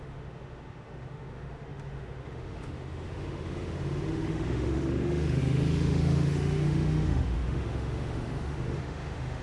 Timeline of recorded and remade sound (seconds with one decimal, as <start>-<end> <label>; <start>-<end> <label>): 0.0-9.4 remade